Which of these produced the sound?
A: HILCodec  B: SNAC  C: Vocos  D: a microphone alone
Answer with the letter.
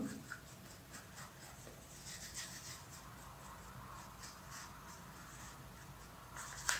D